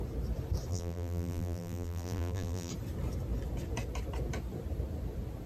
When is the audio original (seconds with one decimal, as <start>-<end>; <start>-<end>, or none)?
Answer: 0.0-0.7; 2.7-5.5